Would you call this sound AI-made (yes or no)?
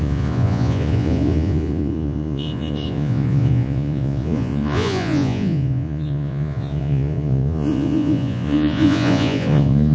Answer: yes